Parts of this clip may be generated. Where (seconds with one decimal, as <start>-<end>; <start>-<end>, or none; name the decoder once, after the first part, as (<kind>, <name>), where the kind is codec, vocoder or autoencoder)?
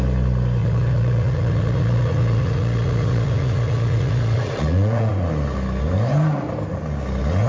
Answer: 0.6-5.1 (vocoder, Vocos)